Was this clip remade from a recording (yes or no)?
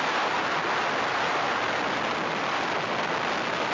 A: no